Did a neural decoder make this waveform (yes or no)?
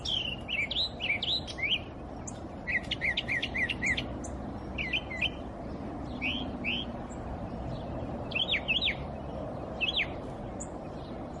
no